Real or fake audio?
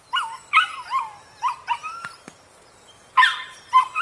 fake